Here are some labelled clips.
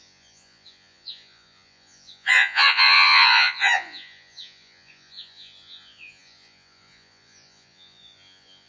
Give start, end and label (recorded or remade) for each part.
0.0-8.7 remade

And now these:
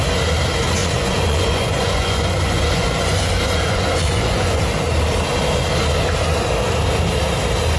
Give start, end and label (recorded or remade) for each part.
0.0-0.8 recorded; 0.8-4.6 remade; 4.6-7.8 recorded